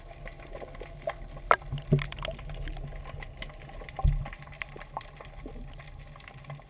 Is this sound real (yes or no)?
yes